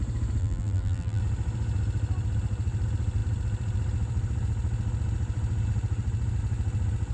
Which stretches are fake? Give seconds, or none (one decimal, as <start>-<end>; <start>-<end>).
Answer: 0.4-1.2